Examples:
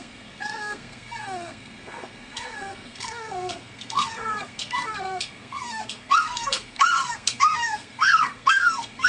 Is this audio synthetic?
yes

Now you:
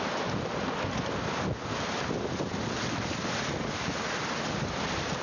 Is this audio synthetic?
no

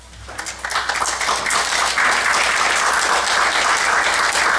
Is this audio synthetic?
no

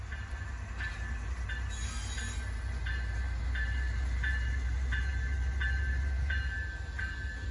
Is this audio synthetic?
no